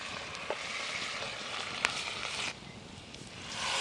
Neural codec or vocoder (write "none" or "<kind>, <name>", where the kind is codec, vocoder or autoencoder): none